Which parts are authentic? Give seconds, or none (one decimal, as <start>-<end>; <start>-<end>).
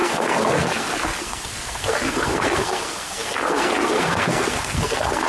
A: none